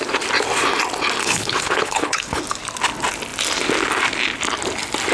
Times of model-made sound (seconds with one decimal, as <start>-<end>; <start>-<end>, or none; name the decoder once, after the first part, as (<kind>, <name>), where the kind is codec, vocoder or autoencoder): 1.2-2.4 (codec, HILCodec)